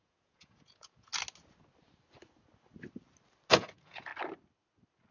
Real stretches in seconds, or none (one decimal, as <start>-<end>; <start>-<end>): 1.1-3.5; 4.1-5.1

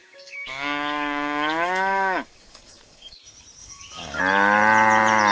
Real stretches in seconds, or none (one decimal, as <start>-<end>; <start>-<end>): 3.2-3.6; 4.2-5.3